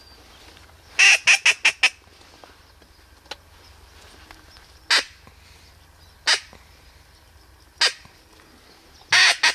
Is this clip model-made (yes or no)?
no